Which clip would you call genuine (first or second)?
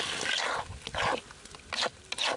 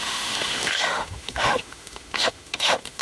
first